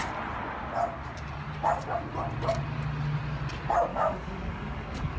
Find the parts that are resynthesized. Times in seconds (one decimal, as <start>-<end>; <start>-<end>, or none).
3.9-5.2